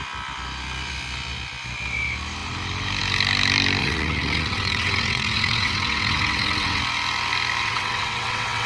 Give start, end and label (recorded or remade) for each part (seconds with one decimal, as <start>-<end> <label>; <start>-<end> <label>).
0.0-3.8 recorded; 3.8-6.8 remade; 6.8-7.6 recorded; 7.6-8.7 remade